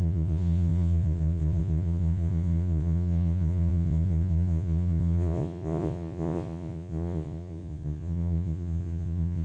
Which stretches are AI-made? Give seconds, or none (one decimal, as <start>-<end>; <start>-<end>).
0.0-9.4